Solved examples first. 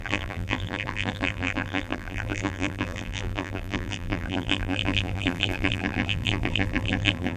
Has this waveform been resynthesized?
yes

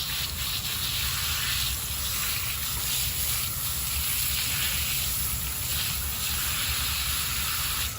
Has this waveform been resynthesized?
no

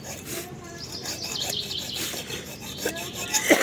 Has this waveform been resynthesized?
yes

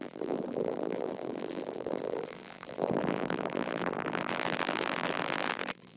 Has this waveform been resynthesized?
yes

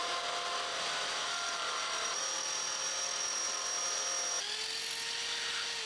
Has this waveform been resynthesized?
no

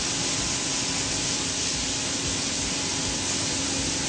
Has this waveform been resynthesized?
no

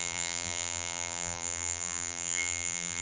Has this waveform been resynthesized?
yes